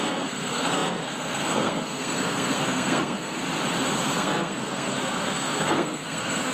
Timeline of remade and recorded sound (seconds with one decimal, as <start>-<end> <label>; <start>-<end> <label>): 0.0-3.4 remade; 3.4-4.0 recorded; 4.0-6.5 remade